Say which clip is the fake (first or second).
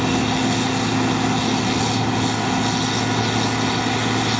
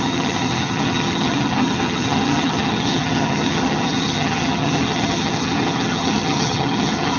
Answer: second